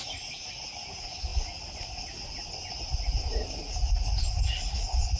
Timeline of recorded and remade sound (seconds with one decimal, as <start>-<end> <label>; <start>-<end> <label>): 0.0-5.2 recorded